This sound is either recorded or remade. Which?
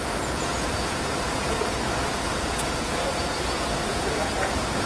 remade